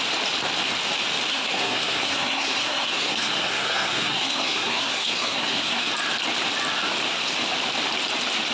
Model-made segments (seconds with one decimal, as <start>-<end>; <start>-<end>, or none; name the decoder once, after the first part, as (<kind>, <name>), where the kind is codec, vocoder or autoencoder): 1.3-5.9 (codec, SNAC)